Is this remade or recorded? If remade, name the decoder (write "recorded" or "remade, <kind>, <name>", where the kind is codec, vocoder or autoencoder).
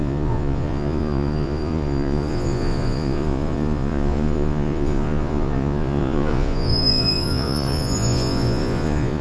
remade, vocoder, Vocos